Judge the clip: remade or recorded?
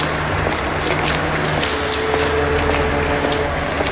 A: recorded